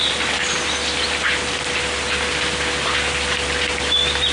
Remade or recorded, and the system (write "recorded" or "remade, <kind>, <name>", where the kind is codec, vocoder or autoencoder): recorded